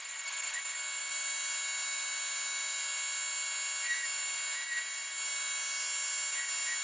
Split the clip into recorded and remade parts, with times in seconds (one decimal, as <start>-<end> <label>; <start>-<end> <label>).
0.0-0.6 remade; 0.6-6.8 recorded